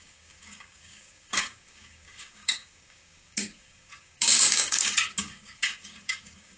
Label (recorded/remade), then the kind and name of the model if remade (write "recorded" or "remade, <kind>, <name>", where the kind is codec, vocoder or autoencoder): remade, codec, DAC